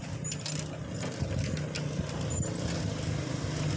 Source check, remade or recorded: recorded